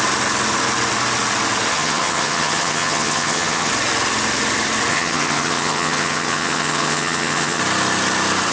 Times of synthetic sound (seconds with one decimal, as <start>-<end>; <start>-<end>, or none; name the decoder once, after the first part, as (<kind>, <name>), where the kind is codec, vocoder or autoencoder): 1.7-3.7 (vocoder, HiFi-GAN); 4.9-7.6